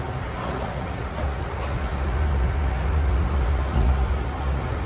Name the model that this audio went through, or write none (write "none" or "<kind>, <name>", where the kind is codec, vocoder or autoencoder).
vocoder, Vocos